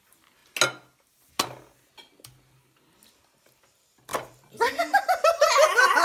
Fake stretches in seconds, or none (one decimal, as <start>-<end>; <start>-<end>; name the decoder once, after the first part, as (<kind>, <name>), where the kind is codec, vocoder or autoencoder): 0.0-0.4 (vocoder, BigVGAN v2); 3.3-6.0